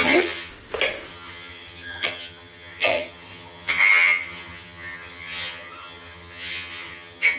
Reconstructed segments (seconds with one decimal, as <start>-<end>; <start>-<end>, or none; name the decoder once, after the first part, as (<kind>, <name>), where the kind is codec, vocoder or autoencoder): 0.0-0.5 (vocoder, HiFi-GAN); 1.1-7.4